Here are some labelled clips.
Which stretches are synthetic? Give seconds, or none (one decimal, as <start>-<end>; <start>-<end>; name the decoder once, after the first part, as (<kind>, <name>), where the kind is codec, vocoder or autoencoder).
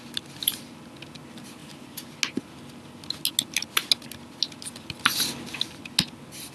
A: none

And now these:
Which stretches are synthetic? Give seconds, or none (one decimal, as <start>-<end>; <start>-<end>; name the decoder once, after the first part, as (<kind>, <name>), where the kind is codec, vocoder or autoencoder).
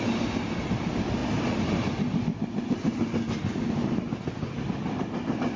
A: none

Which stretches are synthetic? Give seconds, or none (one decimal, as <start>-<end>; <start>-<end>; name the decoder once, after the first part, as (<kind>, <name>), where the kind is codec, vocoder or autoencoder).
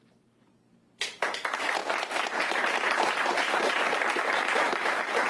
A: 0.0-0.5 (vocoder, BigVGAN v2); 1.2-5.3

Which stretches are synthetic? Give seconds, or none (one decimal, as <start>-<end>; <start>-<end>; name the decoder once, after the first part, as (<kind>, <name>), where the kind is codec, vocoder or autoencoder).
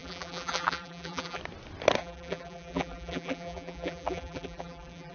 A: 0.0-1.4 (vocoder, BigVGAN v2); 2.0-5.1